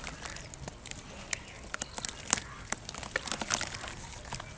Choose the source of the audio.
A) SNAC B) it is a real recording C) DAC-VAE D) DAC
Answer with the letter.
B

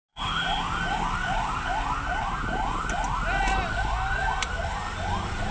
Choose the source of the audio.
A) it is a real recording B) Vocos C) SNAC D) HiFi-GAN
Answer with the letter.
A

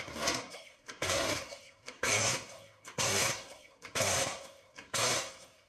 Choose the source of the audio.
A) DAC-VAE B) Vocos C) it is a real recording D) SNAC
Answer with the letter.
D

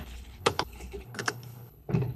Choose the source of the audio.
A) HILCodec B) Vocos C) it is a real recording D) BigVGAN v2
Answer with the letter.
A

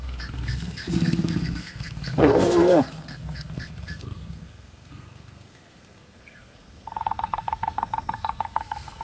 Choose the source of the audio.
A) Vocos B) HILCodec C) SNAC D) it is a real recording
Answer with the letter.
C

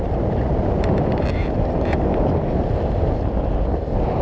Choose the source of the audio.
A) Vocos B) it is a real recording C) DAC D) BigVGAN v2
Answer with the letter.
B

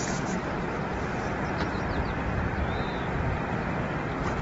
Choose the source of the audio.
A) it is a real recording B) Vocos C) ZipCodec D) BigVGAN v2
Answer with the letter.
A